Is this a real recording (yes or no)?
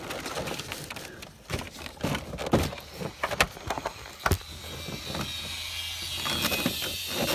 yes